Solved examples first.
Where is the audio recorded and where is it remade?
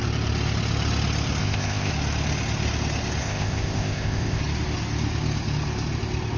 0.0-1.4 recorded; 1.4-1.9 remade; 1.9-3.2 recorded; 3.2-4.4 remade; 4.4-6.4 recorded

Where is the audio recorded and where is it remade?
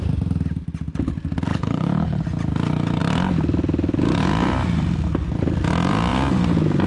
0.0-1.5 recorded; 1.5-2.2 remade; 2.2-6.9 recorded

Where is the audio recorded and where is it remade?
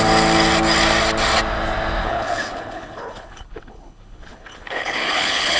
0.0-2.0 recorded; 2.0-5.6 remade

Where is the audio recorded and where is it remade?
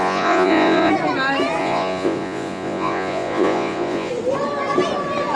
0.0-0.9 remade; 0.9-1.6 recorded; 1.6-4.1 remade; 4.1-5.4 recorded